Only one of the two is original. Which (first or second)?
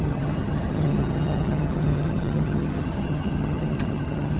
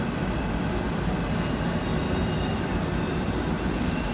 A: second